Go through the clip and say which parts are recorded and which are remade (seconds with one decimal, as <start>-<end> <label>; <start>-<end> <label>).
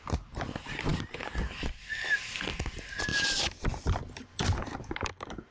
0.0-0.9 recorded; 0.9-1.8 remade; 1.8-3.1 recorded; 3.1-4.7 remade; 4.7-5.5 recorded